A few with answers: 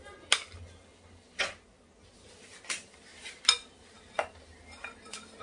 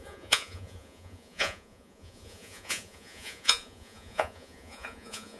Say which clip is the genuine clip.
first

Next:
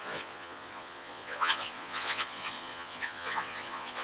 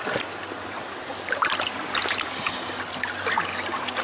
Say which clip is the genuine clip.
second